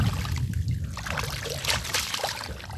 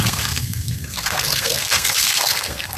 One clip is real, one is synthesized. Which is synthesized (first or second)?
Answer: second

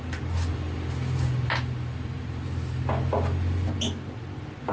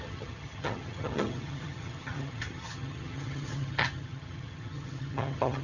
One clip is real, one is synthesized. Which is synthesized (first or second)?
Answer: second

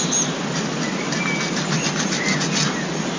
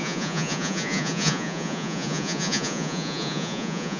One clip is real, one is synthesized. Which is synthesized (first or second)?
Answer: second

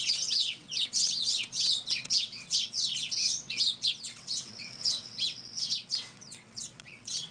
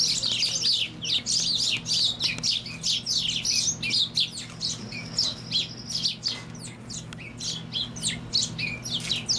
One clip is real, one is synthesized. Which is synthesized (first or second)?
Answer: first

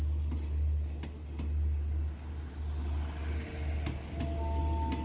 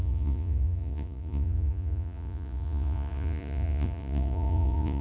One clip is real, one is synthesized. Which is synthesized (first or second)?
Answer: second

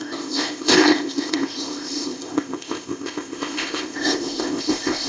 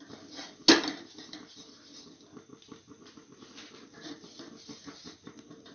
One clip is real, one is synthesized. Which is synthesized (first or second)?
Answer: first